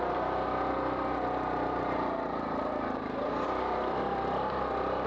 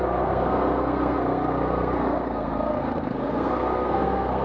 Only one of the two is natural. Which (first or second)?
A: first